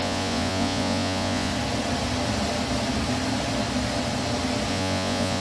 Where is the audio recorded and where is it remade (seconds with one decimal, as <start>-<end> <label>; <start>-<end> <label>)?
0.0-1.5 remade; 1.5-4.7 recorded; 4.7-5.4 remade